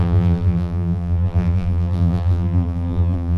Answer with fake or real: fake